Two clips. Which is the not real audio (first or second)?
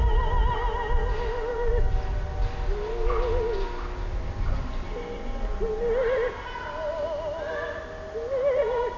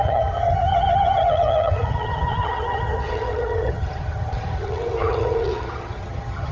second